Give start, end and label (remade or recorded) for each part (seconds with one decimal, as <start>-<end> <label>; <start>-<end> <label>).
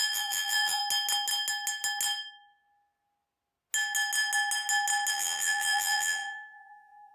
0.0-0.8 remade; 0.8-5.1 recorded; 5.1-7.1 remade